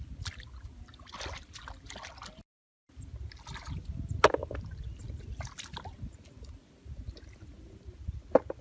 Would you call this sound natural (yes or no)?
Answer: yes